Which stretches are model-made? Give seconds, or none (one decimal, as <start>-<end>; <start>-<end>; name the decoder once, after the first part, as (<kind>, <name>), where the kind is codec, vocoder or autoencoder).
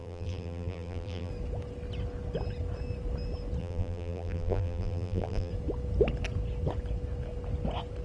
0.0-1.3 (vocoder, BigVGAN v2); 3.6-5.5